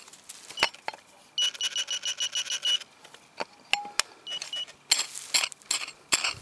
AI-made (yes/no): no